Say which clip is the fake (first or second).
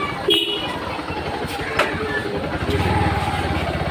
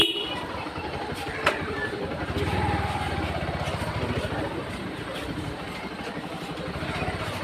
second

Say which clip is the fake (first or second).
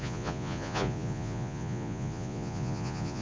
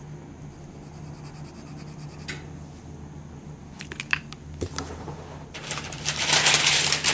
first